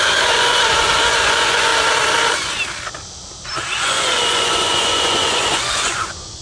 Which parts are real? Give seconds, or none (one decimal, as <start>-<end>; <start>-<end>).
1.7-3.8